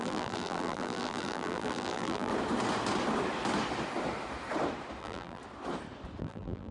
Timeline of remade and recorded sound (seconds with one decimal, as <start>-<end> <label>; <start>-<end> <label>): 0.0-2.3 remade; 2.3-5.0 recorded; 5.0-5.4 remade; 5.4-6.2 recorded; 6.2-6.7 remade